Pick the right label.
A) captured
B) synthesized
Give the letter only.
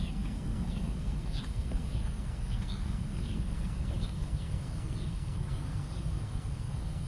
B